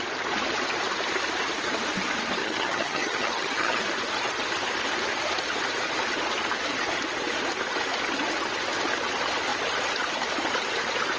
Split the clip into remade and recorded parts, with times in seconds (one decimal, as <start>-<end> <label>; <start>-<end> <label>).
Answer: 0.0-2.4 recorded; 2.4-3.8 remade; 3.8-11.2 recorded